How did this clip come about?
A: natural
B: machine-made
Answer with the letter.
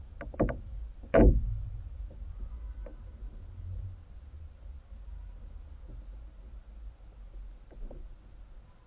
A